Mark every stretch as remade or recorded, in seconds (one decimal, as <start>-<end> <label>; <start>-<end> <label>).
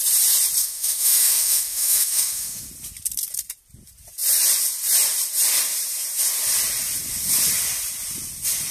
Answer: 0.0-0.6 recorded; 0.6-2.7 remade; 2.7-8.7 recorded